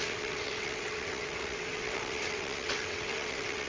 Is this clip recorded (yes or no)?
no